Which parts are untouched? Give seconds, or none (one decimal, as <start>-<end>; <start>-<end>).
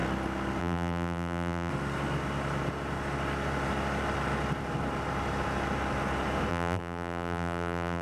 0.0-0.6; 1.7-6.5